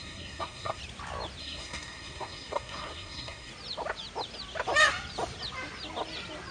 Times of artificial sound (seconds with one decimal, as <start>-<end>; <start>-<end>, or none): 0.0-0.8; 1.4-3.5